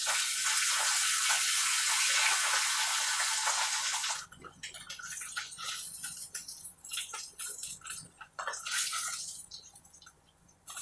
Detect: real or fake fake